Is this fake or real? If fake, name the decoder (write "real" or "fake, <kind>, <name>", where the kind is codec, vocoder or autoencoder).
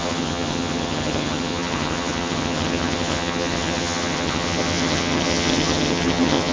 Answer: fake, vocoder, HiFi-GAN